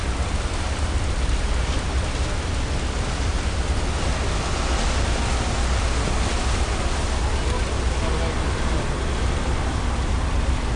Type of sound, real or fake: real